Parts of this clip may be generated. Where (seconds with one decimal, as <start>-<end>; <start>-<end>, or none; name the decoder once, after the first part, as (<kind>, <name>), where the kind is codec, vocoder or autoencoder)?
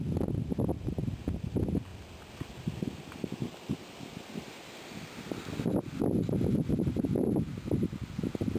none